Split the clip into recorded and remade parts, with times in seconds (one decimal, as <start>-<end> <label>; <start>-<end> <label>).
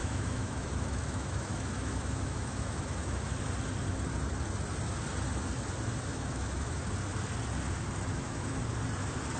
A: 0.0-3.3 remade; 3.3-6.1 recorded; 6.1-6.9 remade; 6.9-8.1 recorded; 8.1-8.6 remade; 8.6-9.4 recorded